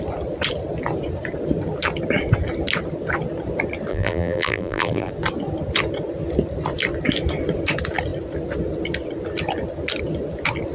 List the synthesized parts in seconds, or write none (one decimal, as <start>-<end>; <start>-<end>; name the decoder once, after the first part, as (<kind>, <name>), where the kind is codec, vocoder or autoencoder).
3.9-5.1 (vocoder, BigVGAN v2)

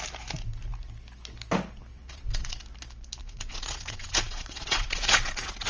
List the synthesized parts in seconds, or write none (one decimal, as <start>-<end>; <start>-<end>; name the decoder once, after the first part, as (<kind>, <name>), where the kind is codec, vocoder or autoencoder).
1.9-2.6 (vocoder, WaveNeXt); 3.2-5.7

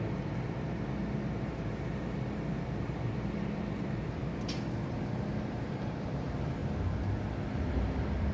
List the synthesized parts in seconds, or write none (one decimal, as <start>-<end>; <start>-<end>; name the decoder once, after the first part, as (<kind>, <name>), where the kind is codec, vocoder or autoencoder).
0.0-6.6 (vocoder, BigVGAN v2); 7.6-8.3

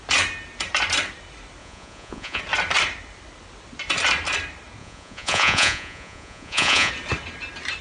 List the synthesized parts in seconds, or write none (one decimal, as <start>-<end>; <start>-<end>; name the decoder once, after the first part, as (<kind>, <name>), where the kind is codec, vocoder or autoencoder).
1.6-2.4 (vocoder, Vocos); 4.8-6.9

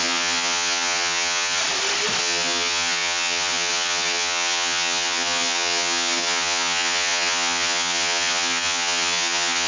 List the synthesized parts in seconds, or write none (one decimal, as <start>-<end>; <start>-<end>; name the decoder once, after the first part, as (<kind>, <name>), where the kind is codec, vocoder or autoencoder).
0.0-1.6 (vocoder, HiFi-GAN); 2.2-9.7

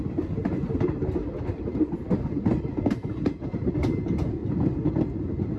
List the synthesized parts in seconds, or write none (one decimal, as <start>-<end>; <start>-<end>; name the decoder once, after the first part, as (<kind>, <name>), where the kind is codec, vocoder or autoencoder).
none

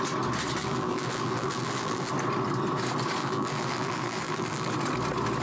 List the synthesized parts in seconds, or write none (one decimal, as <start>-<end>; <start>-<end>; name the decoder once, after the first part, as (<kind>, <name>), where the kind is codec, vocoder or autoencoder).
0.6-2.1 (vocoder, BigVGAN v2); 3.2-4.7